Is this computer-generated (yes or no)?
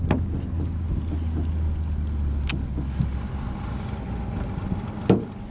no